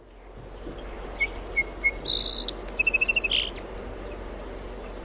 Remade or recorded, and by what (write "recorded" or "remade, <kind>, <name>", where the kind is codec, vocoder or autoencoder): recorded